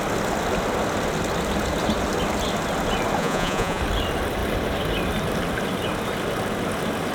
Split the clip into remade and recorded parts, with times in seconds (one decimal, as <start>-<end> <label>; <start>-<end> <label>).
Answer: 0.0-3.2 recorded; 3.2-3.8 remade; 3.8-7.1 recorded